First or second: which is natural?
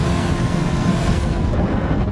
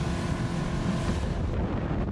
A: second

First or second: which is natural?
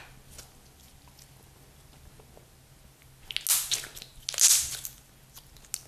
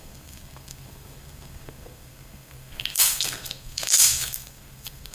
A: first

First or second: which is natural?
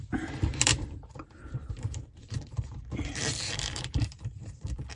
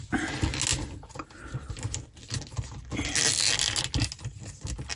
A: second